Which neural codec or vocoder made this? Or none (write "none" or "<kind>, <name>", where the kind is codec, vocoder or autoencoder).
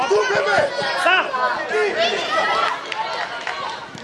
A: none